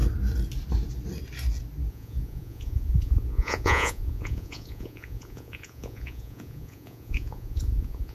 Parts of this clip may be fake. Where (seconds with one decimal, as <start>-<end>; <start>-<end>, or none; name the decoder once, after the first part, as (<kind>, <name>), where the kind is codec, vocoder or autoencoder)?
1.9-8.1 (vocoder, Vocos)